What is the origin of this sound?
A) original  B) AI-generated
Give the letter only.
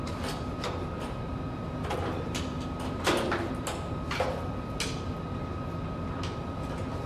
A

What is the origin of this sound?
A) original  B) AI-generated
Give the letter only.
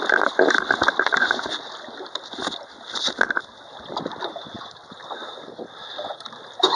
A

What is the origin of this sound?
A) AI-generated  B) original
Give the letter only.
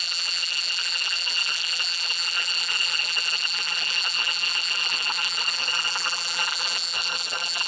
A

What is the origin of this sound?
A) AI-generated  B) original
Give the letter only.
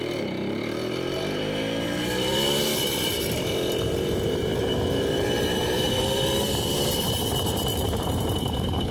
A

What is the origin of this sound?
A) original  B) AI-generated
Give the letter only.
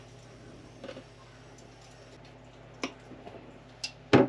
A